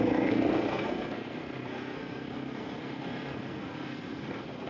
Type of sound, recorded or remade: remade